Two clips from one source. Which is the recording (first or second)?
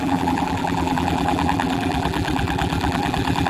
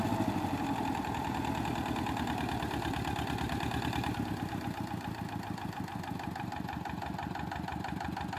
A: second